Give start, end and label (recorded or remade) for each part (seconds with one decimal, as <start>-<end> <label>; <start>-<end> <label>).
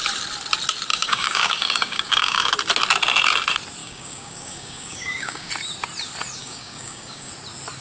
0.0-0.9 recorded; 0.9-2.5 remade; 2.5-3.8 recorded; 3.8-5.5 remade; 5.5-6.4 recorded; 6.4-7.3 remade; 7.3-7.8 recorded